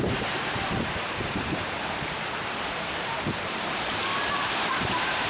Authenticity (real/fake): fake